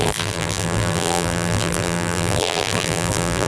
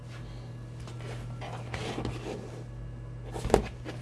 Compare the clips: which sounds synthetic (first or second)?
first